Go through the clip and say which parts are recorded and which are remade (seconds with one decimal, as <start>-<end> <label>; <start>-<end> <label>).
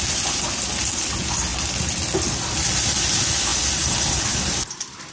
0.0-5.1 recorded